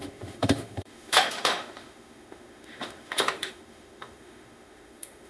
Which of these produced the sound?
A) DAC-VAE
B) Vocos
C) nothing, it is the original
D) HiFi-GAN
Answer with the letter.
A